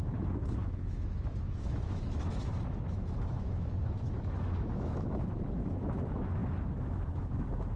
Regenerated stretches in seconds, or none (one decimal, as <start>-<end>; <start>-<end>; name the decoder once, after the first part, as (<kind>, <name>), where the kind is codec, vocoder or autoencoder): 0.0-7.8 (autoencoder, DAC-VAE)